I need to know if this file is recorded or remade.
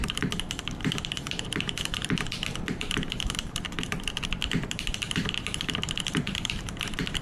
remade